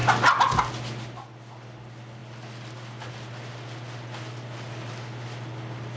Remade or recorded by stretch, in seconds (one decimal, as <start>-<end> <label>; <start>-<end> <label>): 0.0-6.0 recorded